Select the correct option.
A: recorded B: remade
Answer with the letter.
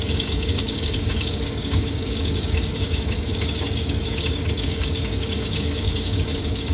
B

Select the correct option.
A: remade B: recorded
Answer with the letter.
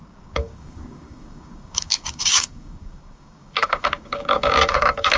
A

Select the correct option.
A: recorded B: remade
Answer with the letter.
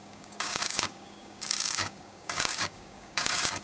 B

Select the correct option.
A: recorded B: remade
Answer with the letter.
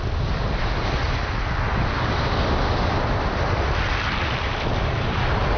A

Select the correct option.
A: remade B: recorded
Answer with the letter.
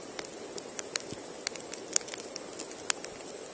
B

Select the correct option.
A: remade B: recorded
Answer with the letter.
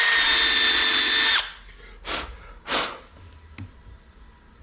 B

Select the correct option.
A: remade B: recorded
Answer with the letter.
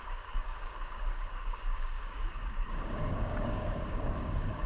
A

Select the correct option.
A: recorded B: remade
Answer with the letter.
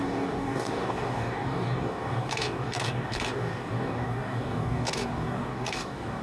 B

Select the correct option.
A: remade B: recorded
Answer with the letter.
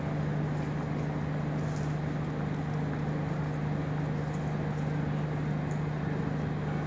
B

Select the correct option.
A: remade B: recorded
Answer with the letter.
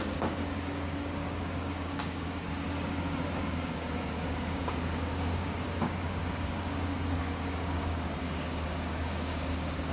A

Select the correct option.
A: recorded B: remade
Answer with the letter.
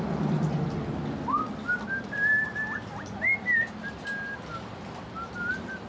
A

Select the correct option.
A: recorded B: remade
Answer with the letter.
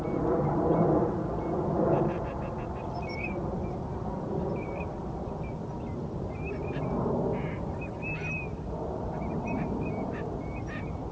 A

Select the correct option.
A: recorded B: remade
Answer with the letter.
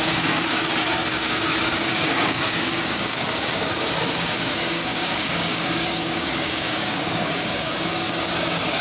B